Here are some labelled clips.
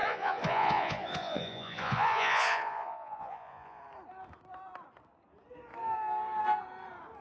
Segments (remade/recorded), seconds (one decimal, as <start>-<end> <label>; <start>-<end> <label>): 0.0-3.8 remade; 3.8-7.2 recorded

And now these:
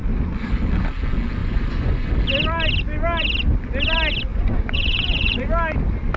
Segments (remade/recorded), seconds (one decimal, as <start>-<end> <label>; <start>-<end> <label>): 0.0-1.4 recorded; 1.4-2.1 remade; 2.1-4.3 recorded; 4.3-5.4 remade; 5.4-6.2 recorded

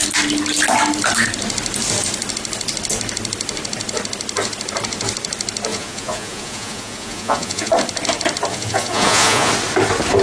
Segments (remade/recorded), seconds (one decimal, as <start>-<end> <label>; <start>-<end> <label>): 0.0-5.7 recorded; 5.7-7.7 remade; 7.7-8.5 recorded; 8.5-9.5 remade; 9.5-10.2 recorded

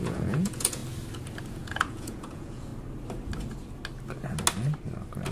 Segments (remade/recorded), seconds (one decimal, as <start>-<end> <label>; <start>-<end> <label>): 0.0-0.8 remade; 0.8-1.5 recorded; 1.5-2.7 remade; 2.7-5.3 recorded